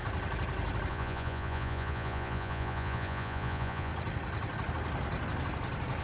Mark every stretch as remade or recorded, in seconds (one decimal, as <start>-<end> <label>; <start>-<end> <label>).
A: 0.0-0.9 recorded; 0.9-3.9 remade; 3.9-6.0 recorded